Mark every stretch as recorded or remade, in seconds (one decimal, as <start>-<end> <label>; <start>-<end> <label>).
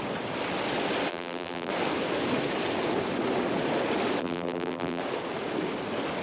0.0-1.1 recorded; 1.1-1.7 remade; 1.7-4.2 recorded; 4.2-5.0 remade; 5.0-6.2 recorded